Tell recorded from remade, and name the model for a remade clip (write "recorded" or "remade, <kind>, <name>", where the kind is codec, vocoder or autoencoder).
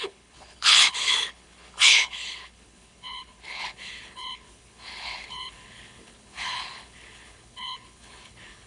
remade, codec, HILCodec